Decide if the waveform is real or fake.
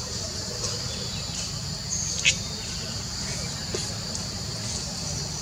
real